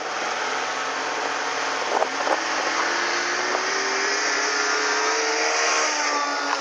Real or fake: real